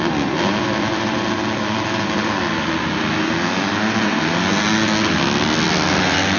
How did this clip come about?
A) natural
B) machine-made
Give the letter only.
A